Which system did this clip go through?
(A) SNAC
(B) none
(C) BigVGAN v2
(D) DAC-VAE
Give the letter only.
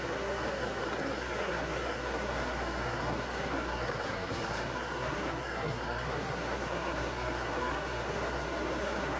A